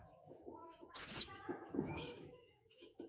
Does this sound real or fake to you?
fake